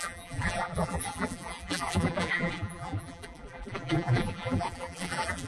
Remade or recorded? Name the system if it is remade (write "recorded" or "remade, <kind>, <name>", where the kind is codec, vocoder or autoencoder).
remade, vocoder, BigVGAN v2